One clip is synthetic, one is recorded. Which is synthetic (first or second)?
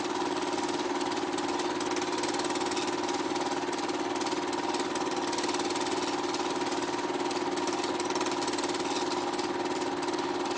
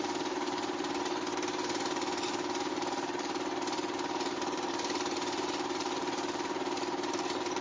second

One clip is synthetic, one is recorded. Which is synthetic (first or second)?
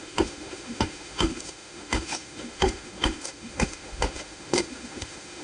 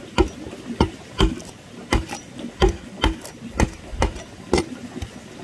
first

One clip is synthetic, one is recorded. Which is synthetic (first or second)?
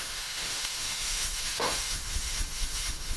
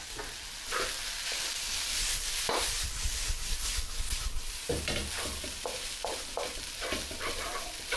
first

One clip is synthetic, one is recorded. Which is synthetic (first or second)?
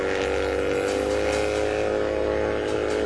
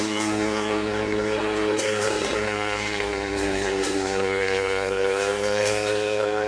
second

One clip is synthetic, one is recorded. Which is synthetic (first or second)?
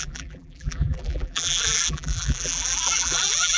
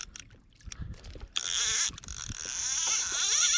first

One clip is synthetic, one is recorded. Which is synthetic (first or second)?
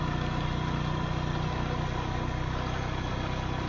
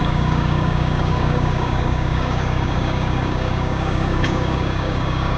second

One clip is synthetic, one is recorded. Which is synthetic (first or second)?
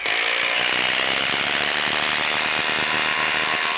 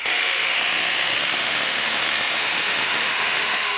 second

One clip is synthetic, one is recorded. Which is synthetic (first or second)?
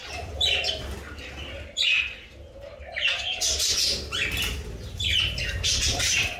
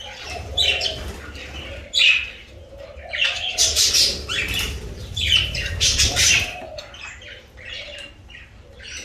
second